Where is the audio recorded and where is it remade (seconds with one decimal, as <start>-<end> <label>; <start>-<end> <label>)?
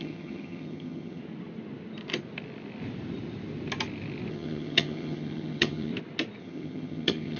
0.0-1.2 remade; 1.2-4.3 recorded; 4.3-5.9 remade; 5.9-6.4 recorded; 6.4-7.4 remade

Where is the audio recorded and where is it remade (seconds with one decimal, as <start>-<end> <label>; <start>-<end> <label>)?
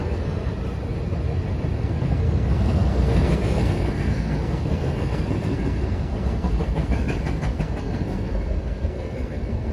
0.0-0.5 remade; 0.5-1.8 recorded; 1.8-9.7 remade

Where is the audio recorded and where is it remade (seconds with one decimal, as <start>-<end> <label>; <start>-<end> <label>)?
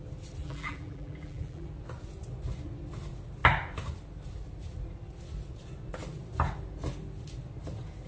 0.0-0.4 recorded; 0.4-1.7 remade; 1.7-8.1 recorded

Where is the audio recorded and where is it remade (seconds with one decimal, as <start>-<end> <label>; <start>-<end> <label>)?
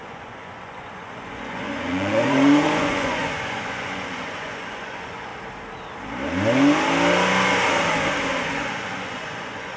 0.0-5.3 remade; 5.3-8.4 recorded; 8.4-9.8 remade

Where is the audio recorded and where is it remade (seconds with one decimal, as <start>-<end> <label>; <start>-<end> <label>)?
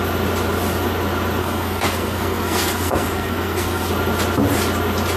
0.0-1.4 recorded; 1.4-3.9 remade; 3.9-5.2 recorded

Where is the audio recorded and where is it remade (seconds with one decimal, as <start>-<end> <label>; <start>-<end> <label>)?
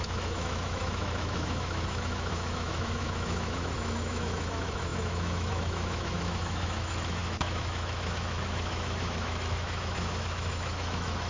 0.0-11.3 remade